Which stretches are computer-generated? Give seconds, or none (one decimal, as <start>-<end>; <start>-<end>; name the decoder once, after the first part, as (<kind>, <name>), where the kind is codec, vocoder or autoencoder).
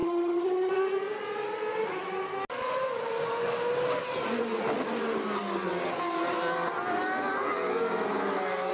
0.0-0.7 (vocoder, HiFi-GAN)